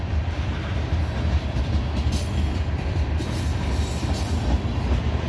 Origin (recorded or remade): recorded